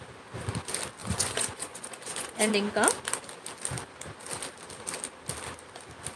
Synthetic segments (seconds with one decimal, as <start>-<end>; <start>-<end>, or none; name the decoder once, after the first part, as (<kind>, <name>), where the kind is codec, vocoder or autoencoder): 1.0-2.5 (vocoder, Vocos)